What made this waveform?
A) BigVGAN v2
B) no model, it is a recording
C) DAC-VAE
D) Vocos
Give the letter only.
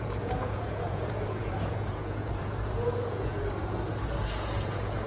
D